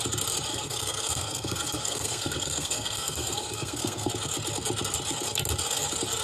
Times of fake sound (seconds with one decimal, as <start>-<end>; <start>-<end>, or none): 0.5-4.1